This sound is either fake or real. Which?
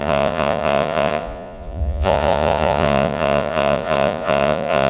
fake